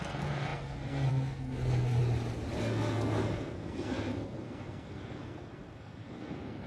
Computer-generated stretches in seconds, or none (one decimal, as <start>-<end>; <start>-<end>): 0.0-2.0; 2.6-6.7